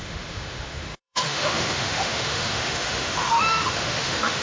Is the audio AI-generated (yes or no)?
yes